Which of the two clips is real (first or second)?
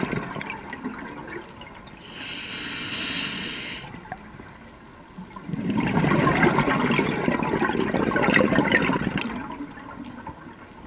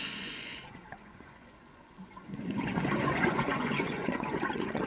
first